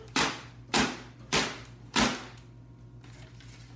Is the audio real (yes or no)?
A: yes